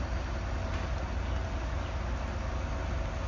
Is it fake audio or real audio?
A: real